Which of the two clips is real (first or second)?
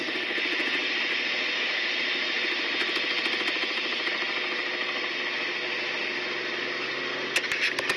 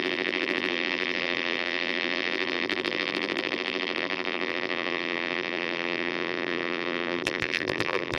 first